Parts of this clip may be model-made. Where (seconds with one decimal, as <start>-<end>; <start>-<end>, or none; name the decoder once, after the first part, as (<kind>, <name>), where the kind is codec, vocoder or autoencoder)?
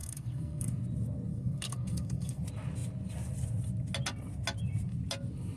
0.0-0.7 (codec, SNAC); 1.3-2.4